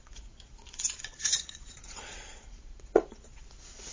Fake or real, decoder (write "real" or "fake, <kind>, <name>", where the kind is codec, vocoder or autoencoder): fake, vocoder, Vocos